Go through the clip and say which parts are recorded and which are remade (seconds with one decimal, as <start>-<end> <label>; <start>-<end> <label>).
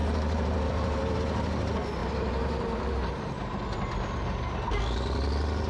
0.0-1.2 remade; 1.2-2.0 recorded; 2.0-4.8 remade; 4.8-5.7 recorded